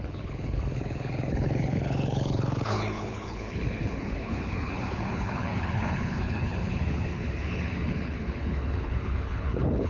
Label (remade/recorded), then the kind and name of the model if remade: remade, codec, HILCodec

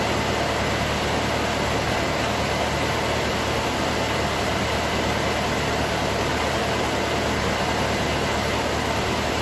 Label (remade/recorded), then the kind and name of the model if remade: recorded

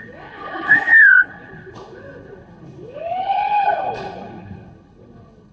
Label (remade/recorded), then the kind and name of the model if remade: remade, codec, HILCodec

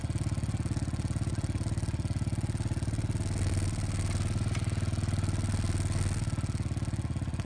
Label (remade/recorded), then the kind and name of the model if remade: recorded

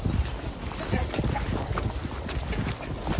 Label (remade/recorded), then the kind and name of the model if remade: recorded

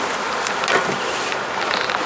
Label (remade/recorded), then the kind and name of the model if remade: recorded